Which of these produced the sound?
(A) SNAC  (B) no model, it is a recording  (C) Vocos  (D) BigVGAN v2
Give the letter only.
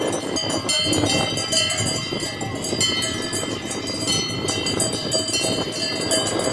B